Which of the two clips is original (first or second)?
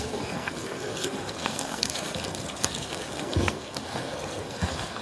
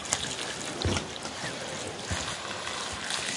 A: second